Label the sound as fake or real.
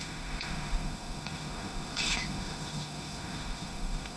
fake